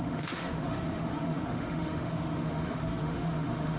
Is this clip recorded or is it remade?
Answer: remade